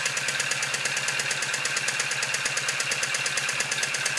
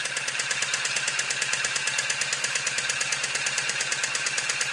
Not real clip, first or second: second